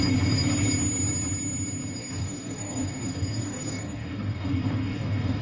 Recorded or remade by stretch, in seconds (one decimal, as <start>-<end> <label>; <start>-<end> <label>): 0.0-2.0 recorded; 2.0-5.4 remade